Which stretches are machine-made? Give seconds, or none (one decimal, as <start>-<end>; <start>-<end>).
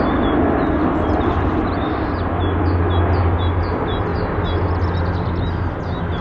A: none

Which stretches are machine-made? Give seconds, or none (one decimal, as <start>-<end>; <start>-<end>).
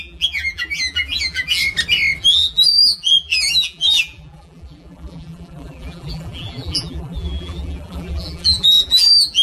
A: 0.0-1.6; 2.2-9.4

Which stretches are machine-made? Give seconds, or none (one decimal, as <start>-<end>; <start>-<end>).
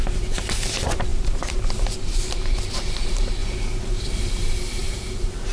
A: 0.0-3.4; 4.3-5.5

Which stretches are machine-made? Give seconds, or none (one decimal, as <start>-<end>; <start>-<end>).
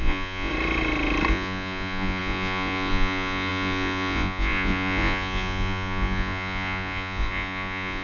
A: 0.0-0.5; 1.3-8.0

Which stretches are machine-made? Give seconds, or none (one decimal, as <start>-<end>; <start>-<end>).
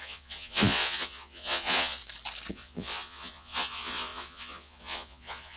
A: 0.0-2.0; 2.5-5.6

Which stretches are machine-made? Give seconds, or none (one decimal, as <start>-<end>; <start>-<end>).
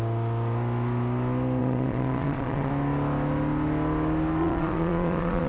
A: 1.6-2.7; 4.4-5.5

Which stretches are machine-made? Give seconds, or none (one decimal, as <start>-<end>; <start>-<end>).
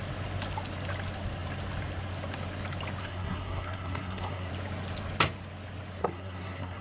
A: 3.0-4.5; 6.0-6.8